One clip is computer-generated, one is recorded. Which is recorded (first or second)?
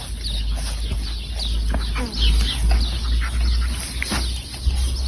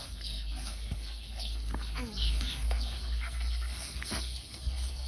first